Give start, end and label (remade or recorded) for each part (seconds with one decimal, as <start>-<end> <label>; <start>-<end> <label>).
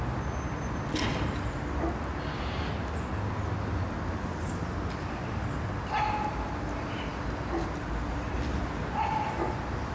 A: 0.0-9.9 recorded